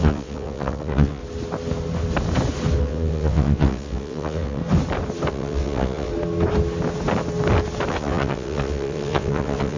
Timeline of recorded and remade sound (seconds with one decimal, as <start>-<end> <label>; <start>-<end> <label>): 0.0-1.2 remade; 1.2-2.8 recorded; 2.8-4.6 remade; 4.6-5.3 recorded; 5.3-6.1 remade; 6.1-7.9 recorded; 7.9-9.8 remade